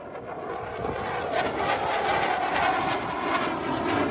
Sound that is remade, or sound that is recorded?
recorded